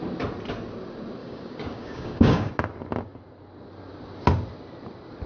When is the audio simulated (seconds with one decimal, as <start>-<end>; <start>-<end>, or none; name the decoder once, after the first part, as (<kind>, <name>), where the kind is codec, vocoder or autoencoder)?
1.2-2.5 (codec, DAC)